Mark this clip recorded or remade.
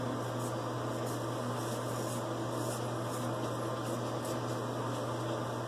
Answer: recorded